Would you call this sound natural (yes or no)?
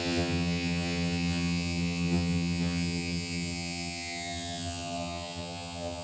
no